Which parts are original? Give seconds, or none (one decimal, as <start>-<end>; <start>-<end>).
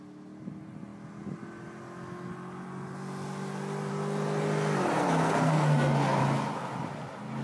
0.0-5.0; 6.2-7.4